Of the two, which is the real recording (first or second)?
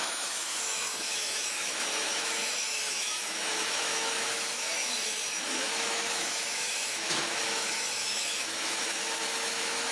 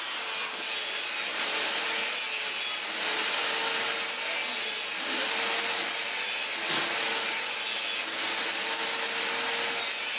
second